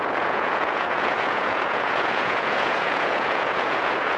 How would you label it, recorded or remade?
remade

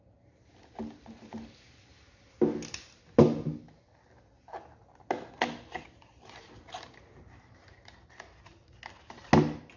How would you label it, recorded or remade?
recorded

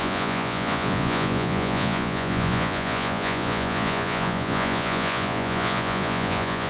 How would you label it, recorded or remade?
remade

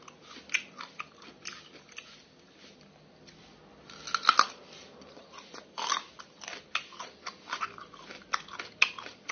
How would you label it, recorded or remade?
recorded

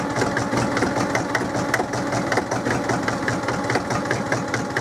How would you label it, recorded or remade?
recorded